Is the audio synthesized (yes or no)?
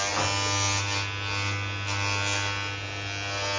no